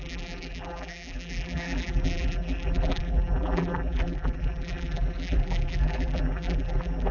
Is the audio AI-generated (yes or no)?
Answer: yes